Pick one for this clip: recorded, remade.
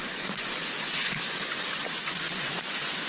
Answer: remade